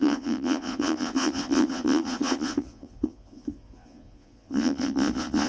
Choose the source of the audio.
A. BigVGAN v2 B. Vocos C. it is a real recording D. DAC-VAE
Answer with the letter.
B